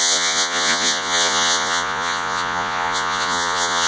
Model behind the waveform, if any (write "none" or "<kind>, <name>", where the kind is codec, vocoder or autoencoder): vocoder, Vocos